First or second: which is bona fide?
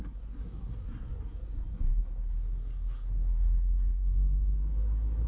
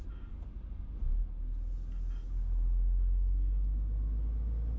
second